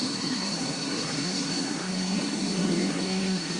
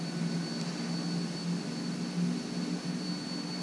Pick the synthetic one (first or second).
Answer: first